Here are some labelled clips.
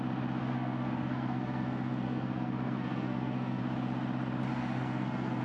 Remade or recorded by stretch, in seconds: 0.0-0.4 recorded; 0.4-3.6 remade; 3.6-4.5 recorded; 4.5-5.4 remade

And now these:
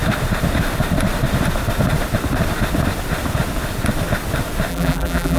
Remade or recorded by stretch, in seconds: 0.0-4.7 recorded; 4.7-5.4 remade

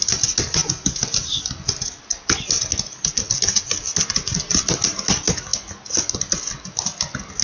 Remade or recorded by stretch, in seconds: 0.0-7.4 recorded

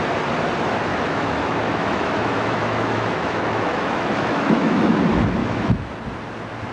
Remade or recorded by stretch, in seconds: 0.0-0.9 recorded; 0.9-4.9 remade; 4.9-5.4 recorded; 5.4-5.9 remade; 5.9-6.7 recorded

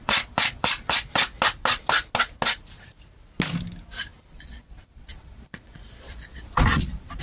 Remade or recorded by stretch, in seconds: 0.0-1.3 remade; 1.3-4.3 recorded; 4.3-7.2 remade